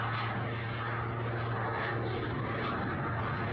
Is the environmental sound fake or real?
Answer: real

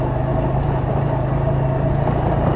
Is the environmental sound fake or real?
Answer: real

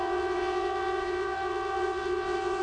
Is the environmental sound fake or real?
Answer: fake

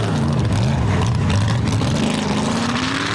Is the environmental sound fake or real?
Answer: real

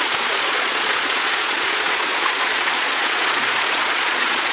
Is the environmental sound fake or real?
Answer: fake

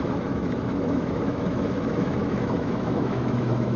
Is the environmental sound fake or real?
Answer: fake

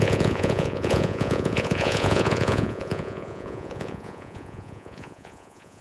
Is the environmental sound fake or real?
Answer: fake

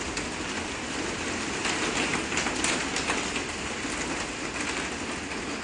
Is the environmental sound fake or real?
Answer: real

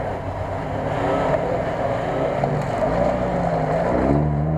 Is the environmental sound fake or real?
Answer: real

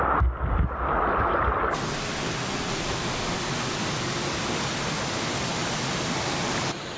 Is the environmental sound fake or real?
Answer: real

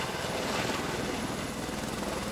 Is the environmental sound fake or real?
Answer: real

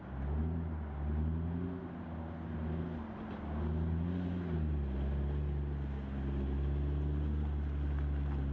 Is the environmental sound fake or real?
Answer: real